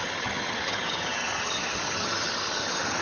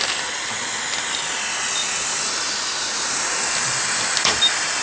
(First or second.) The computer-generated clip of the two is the first